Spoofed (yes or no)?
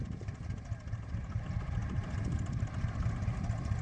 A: no